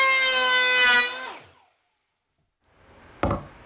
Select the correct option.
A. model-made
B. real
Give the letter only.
B